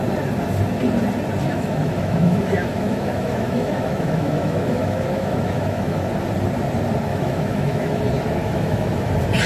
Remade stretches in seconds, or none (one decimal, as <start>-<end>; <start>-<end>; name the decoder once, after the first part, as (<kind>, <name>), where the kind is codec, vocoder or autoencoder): 1.4-6.1 (autoencoder, DAC-VAE); 7.1-8.0; 8.4-9.1

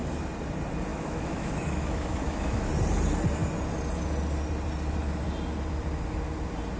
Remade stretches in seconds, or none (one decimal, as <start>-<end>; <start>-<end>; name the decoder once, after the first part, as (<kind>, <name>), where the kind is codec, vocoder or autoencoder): 0.9-2.7 (autoencoder, DAC-VAE)

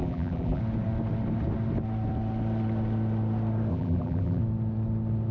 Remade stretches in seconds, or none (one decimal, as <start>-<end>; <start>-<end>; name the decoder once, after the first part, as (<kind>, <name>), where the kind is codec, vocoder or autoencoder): 0.0-0.6 (vocoder, BigVGAN v2); 3.7-4.4